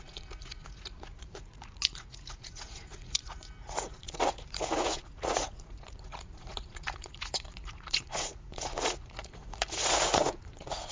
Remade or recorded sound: remade